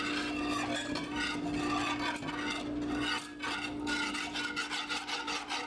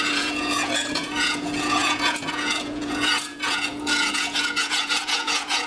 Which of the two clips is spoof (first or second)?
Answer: second